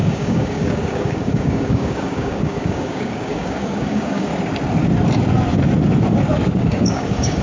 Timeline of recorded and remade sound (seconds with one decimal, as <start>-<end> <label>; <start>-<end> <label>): 0.0-4.3 remade; 4.3-6.5 recorded; 6.5-7.4 remade